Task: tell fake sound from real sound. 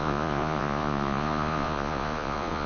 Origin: fake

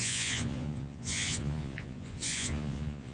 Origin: fake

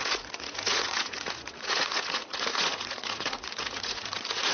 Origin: fake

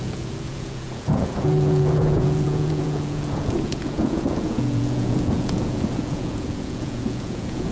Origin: fake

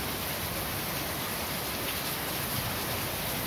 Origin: real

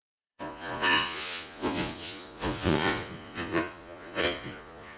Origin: fake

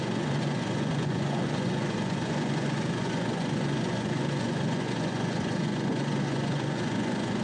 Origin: fake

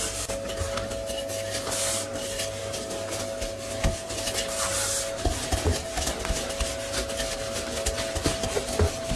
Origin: real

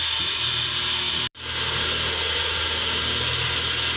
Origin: real